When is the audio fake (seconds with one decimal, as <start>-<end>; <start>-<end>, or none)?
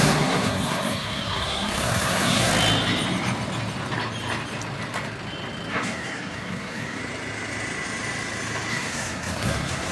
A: 0.0-2.5; 5.7-7.0; 8.7-9.9